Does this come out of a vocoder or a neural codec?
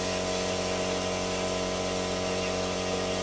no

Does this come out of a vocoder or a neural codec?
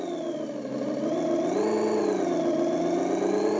no